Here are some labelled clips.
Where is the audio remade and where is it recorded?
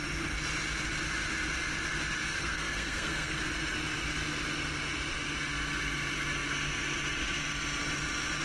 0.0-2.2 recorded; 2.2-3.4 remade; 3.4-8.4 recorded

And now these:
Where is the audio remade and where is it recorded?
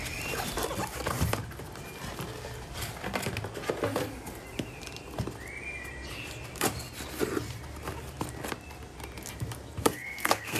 0.0-9.8 recorded; 9.8-10.6 remade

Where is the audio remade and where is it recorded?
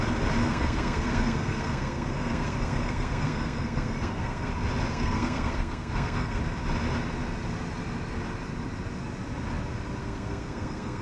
0.0-0.4 recorded; 0.4-4.5 remade; 4.5-4.9 recorded; 4.9-6.4 remade; 6.4-10.0 recorded; 10.0-11.0 remade